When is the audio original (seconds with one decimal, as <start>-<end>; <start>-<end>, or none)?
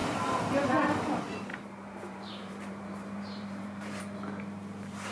0.0-1.5; 4.0-5.1